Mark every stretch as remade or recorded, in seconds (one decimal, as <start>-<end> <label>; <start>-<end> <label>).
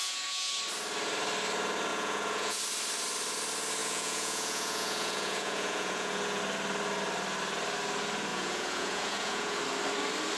0.0-0.6 remade; 0.6-1.9 recorded; 1.9-2.6 remade; 2.6-3.8 recorded; 3.8-6.4 remade; 6.4-8.3 recorded; 8.3-9.6 remade; 9.6-10.4 recorded